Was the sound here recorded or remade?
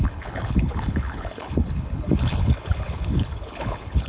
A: remade